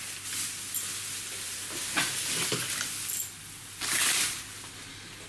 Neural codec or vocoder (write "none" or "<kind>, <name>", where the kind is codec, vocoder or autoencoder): none